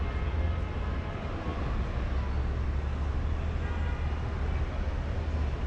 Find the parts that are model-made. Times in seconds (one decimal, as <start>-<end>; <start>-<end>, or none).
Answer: none